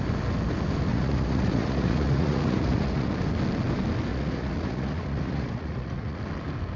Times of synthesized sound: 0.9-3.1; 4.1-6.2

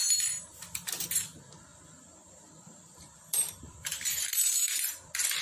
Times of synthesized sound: 0.0-0.9; 1.7-3.8

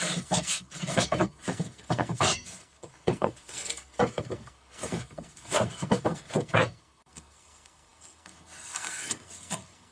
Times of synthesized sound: 0.0-9.9

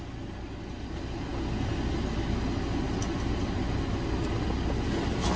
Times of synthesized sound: none